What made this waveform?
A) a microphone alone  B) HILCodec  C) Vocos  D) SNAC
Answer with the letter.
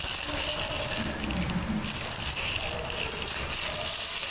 A